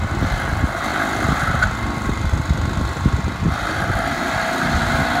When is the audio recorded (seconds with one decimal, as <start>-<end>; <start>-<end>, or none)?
0.0-0.9; 4.0-5.2

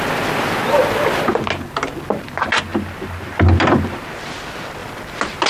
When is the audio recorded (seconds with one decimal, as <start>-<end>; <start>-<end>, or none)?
0.0-5.5

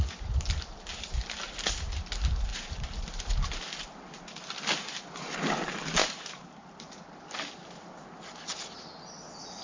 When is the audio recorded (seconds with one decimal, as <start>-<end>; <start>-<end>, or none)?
0.0-2.5; 3.1-6.0; 6.8-9.6

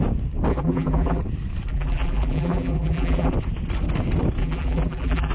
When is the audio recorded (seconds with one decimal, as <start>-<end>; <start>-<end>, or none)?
0.0-0.5; 1.2-1.7; 3.3-4.4

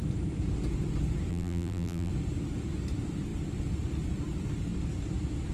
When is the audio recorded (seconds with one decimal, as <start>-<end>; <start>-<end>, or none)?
0.0-1.3; 2.1-5.5

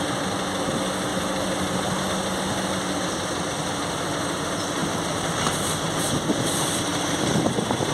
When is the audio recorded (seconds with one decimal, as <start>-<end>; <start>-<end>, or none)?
0.0-4.8; 6.2-6.9

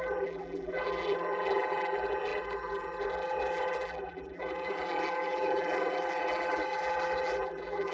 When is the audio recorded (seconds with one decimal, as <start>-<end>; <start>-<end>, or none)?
none

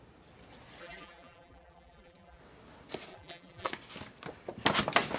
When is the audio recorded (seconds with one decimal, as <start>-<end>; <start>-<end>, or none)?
0.0-0.8; 2.4-3.1; 3.7-5.2